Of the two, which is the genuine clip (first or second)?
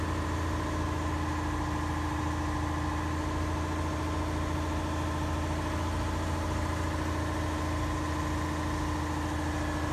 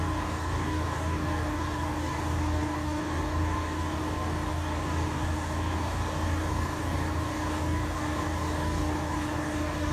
first